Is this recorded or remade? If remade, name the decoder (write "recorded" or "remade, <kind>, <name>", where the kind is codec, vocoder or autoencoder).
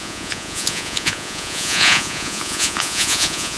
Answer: remade, vocoder, Vocos